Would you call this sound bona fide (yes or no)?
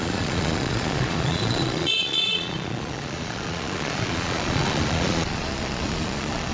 no